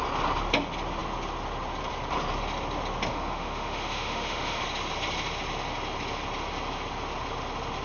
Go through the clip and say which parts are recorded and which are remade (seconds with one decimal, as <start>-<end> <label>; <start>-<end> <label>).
0.0-3.1 recorded; 3.1-4.6 remade; 4.6-7.8 recorded